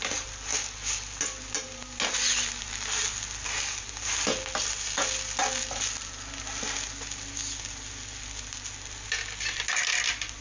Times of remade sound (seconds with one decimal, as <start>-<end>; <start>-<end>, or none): none